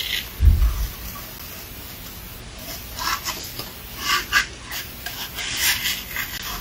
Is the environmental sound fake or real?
real